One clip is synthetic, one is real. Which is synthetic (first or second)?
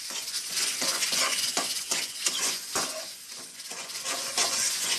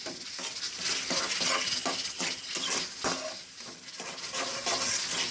first